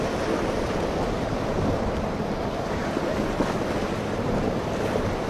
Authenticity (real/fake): fake